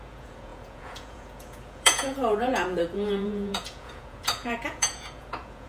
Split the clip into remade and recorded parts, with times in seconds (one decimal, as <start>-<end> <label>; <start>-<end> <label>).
0.0-5.7 remade